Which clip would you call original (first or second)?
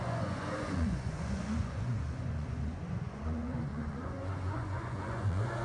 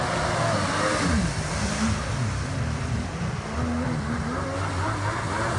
second